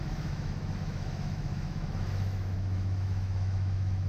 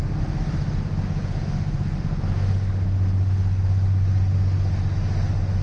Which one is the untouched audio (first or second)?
second